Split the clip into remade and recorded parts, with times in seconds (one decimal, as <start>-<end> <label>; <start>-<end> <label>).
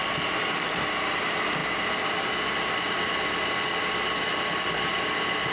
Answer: 0.0-5.5 recorded